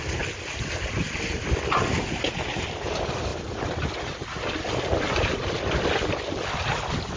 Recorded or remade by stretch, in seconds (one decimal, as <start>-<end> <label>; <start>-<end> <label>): 0.0-7.2 recorded